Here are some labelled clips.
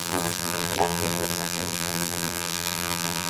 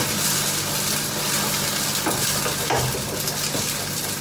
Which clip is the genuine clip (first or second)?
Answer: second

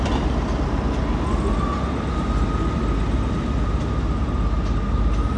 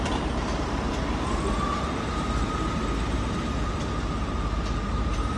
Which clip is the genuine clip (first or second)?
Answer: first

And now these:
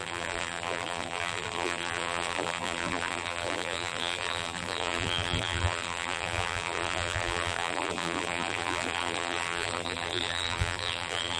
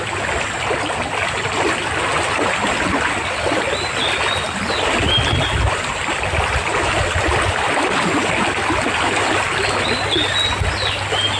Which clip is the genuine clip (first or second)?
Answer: second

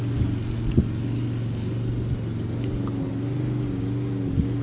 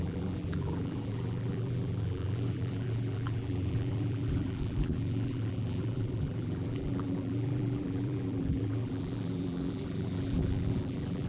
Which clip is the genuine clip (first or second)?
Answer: first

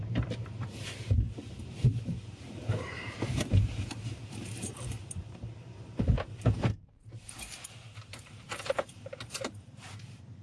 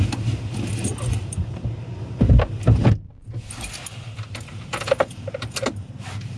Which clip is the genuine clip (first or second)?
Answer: second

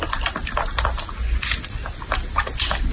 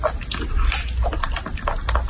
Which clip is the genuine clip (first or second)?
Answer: second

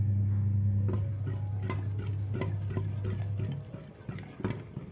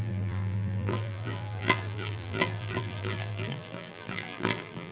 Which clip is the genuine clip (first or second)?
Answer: first